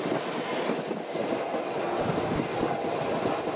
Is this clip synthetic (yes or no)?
no